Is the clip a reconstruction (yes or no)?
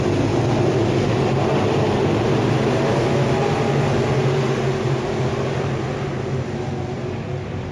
no